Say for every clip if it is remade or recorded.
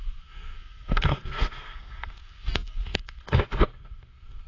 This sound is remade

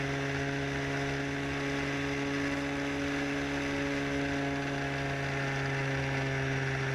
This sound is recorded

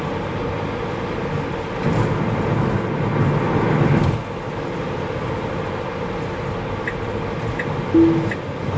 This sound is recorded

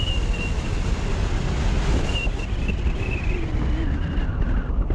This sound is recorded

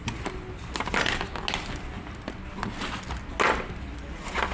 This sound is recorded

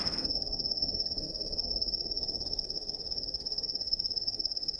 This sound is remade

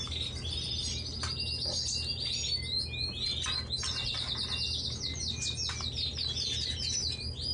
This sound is recorded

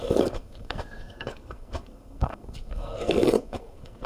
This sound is remade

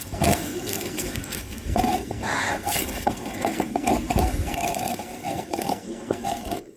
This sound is remade